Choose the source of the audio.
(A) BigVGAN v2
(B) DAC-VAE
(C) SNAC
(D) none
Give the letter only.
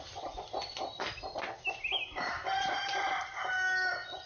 D